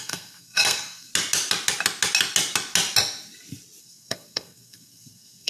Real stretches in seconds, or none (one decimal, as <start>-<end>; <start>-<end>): 1.1-3.8